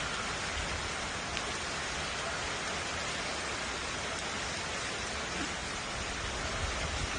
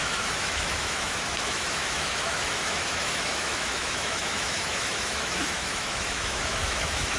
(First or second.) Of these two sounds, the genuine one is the first